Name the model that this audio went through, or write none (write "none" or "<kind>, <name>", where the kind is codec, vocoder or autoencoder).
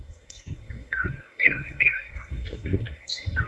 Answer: codec, SNAC